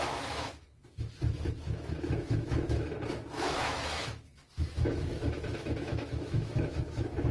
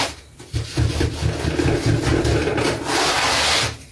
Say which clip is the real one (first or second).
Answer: second